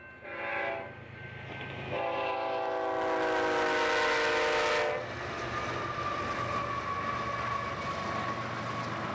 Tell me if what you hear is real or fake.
real